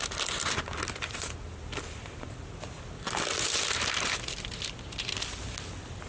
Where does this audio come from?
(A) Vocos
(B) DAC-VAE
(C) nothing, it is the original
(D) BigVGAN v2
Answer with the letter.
C